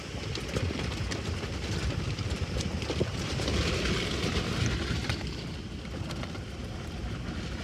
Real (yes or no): yes